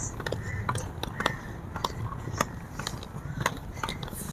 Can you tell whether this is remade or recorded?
recorded